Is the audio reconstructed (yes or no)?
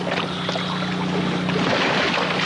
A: no